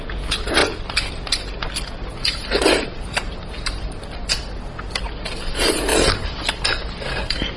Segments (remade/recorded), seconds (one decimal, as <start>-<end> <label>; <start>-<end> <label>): 0.0-5.9 recorded; 5.9-6.6 remade; 6.6-7.6 recorded

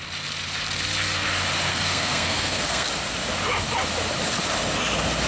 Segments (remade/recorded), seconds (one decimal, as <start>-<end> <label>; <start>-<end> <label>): 0.0-1.7 recorded; 1.7-2.9 remade; 2.9-5.3 recorded

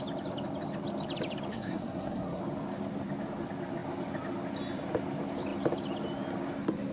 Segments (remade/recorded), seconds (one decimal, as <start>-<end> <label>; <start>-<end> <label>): 0.0-1.5 recorded; 1.5-2.4 remade; 2.4-6.9 recorded

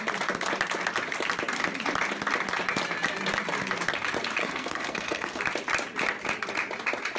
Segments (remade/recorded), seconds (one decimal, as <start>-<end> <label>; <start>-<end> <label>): 0.0-4.4 recorded; 4.4-5.4 remade; 5.4-7.2 recorded

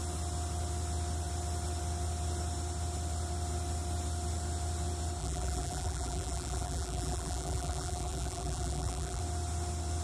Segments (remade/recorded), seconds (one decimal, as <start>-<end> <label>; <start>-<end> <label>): 0.0-5.2 recorded; 5.2-9.2 remade; 9.2-10.0 recorded

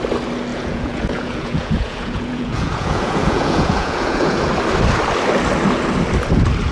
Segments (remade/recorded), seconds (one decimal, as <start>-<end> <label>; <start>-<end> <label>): 0.0-0.5 recorded; 0.5-4.5 remade; 4.5-6.7 recorded

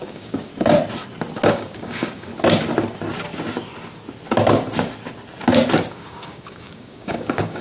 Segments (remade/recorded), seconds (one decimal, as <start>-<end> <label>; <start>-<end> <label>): 0.0-0.5 remade; 0.5-1.5 recorded; 1.5-2.3 remade; 2.3-5.9 recorded; 5.9-7.6 remade

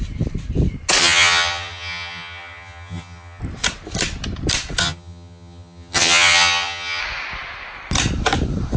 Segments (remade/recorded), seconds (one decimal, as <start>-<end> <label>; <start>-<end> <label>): 0.0-1.0 recorded; 1.0-3.4 remade; 3.4-4.8 recorded; 4.8-7.0 remade; 7.0-8.8 recorded